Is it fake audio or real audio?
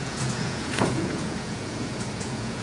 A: fake